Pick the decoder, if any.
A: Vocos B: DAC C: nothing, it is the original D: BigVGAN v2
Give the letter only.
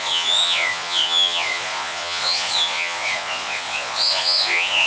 A